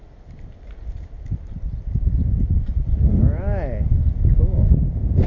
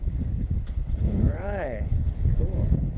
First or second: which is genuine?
first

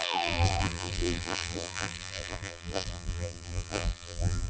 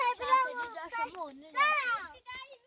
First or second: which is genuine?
second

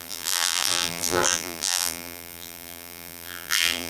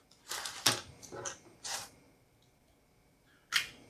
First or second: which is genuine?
second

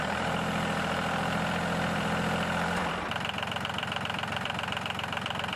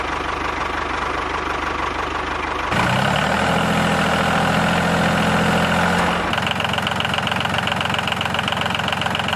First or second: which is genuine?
second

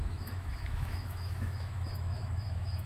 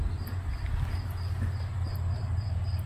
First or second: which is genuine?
second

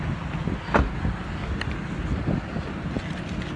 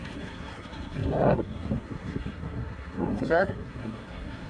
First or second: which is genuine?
first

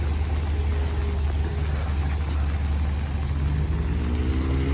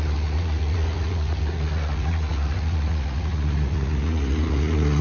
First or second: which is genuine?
first